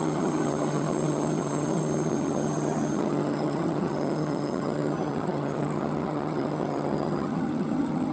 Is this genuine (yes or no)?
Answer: no